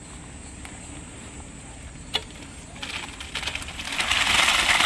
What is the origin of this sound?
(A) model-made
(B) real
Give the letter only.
B